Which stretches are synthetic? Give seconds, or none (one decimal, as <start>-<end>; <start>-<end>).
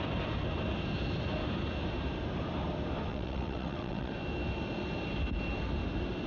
3.1-4.1